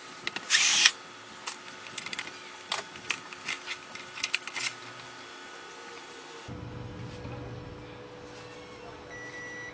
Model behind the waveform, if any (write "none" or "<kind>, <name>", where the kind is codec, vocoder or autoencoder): none